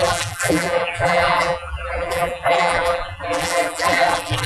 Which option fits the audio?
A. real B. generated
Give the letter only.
B